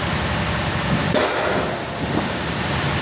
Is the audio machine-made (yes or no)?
no